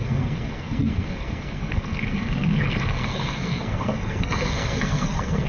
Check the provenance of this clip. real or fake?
fake